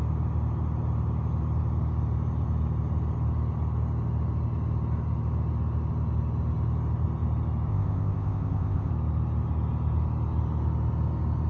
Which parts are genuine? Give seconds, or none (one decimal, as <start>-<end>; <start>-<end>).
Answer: 0.0-7.7; 8.9-11.5